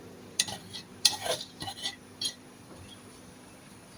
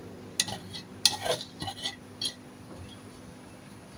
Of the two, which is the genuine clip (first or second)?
second